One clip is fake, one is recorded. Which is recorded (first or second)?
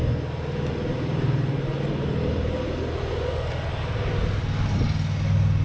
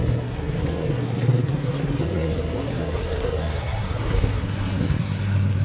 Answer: first